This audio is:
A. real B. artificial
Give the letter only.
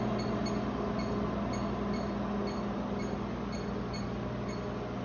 A